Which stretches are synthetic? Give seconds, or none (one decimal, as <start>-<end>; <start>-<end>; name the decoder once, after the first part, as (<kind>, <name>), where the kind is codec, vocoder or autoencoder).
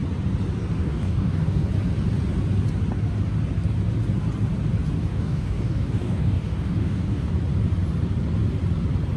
0.8-1.7 (codec, DAC); 5.1-7.3